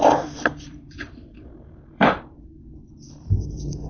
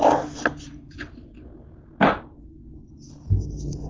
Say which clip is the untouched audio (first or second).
second